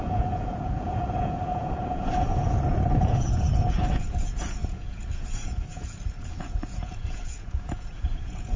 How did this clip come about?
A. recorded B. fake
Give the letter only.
B